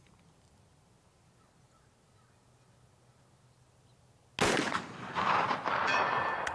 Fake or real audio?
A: real